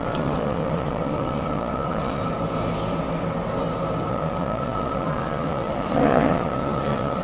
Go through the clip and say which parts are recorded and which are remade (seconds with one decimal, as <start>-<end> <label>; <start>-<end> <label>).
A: 0.0-2.2 remade; 2.2-4.1 recorded; 4.1-7.2 remade